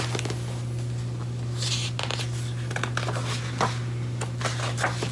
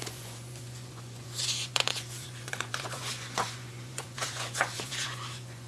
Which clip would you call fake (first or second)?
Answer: second